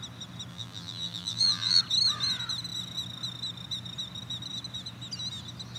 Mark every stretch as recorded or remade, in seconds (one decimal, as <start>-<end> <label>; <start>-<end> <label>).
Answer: 0.0-0.5 recorded; 0.5-1.8 remade; 1.8-5.8 recorded